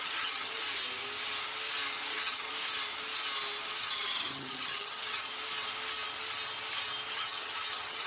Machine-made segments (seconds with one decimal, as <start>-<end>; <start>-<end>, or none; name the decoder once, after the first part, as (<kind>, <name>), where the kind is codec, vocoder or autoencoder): 0.0-0.6 (vocoder, HiFi-GAN); 2.1-2.5; 3.8-5.3; 7.1-8.1